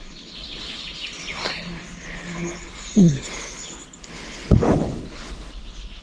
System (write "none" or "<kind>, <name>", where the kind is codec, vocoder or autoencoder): codec, HILCodec